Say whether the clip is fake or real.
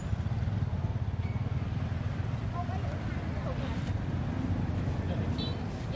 real